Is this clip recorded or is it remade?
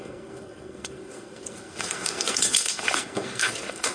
remade